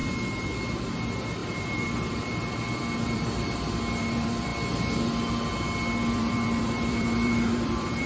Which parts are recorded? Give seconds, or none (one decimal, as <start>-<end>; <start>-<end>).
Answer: 0.0-0.9; 4.5-6.1